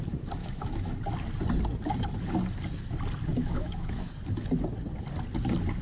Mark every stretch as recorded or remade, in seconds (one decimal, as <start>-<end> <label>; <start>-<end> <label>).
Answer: 0.0-0.4 recorded; 0.4-0.9 remade; 0.9-3.3 recorded; 3.3-4.1 remade; 4.1-5.8 recorded